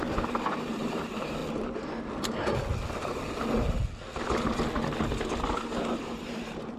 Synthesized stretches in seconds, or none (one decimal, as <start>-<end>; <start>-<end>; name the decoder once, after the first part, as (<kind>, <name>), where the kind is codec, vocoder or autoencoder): 0.0-1.4 (vocoder, BigVGAN v2); 5.5-6.8